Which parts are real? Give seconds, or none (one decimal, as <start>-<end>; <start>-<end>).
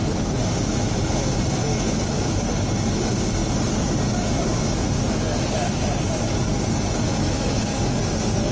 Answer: 0.0-1.7; 2.4-7.1; 7.8-8.5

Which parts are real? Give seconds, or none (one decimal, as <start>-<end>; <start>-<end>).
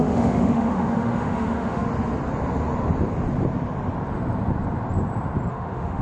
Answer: 1.9-5.5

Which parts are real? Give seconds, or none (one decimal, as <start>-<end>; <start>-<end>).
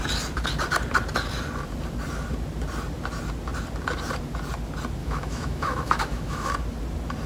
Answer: 0.0-5.0; 6.5-7.3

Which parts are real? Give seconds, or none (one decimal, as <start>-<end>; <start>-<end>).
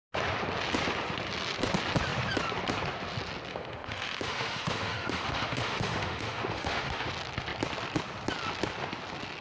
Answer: 0.0-3.5; 7.1-9.4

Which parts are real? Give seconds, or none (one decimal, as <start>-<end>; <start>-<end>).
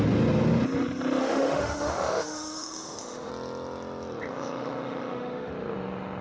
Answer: 0.0-1.2; 3.3-4.3; 5.5-6.2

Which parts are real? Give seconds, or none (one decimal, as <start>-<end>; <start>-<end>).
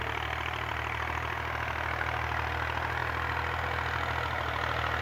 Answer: 0.0-5.0